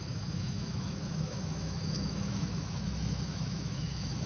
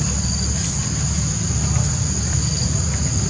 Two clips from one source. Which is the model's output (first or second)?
first